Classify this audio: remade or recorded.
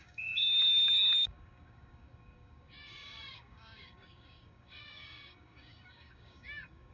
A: remade